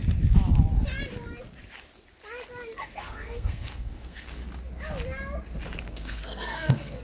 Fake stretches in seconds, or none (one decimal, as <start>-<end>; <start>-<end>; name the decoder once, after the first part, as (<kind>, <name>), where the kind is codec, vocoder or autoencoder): 2.8-4.4 (codec, SNAC); 5.9-7.0